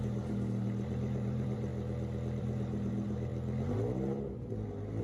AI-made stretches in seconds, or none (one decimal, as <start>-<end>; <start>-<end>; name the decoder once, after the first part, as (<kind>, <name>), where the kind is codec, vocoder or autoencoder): 0.0-1.7 (vocoder, BigVGAN v2); 2.4-3.3